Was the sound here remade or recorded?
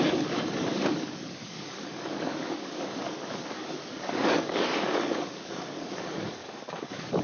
remade